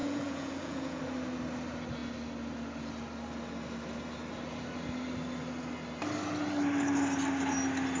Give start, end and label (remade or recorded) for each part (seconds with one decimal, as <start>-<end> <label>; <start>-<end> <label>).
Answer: 0.0-1.0 remade; 1.0-8.0 recorded